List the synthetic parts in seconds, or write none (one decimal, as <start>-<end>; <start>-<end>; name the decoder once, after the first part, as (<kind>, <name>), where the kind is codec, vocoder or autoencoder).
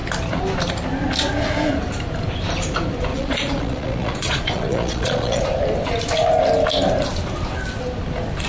3.1-5.4 (vocoder, Vocos)